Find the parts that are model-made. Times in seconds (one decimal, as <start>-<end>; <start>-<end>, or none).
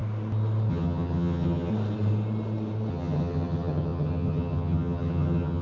0.7-1.7; 2.9-5.6